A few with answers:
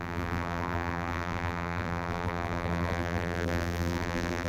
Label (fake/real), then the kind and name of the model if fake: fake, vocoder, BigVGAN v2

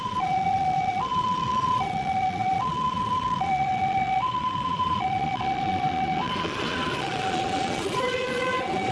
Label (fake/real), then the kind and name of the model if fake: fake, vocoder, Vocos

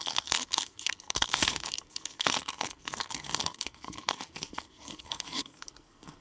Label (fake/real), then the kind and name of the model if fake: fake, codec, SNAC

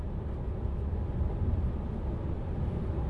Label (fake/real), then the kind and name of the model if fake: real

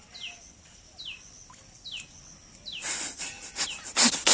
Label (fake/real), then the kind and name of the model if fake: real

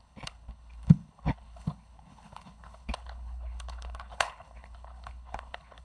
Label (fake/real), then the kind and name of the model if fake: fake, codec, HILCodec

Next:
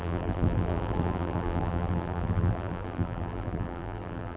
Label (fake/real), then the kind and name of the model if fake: fake, vocoder, BigVGAN v2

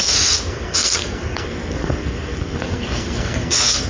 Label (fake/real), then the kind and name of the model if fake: fake, codec, SNAC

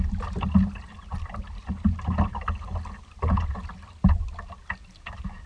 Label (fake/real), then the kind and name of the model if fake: real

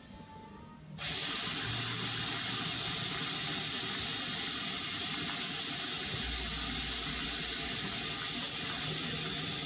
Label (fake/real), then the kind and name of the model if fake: real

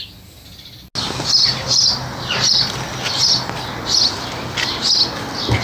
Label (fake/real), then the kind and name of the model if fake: real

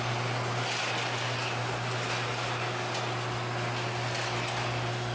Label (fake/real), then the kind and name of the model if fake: real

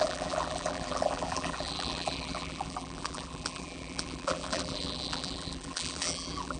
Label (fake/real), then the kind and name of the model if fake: fake, vocoder, BigVGAN v2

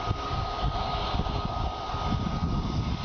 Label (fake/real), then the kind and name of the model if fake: real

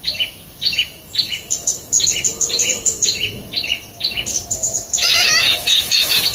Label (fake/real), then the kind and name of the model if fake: fake, autoencoder, DAC-VAE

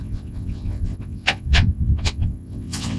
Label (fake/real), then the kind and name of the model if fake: fake, vocoder, WaveNeXt